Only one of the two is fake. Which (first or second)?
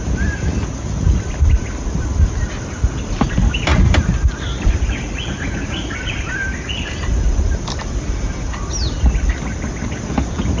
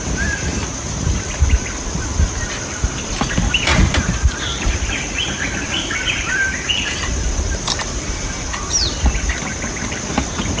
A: second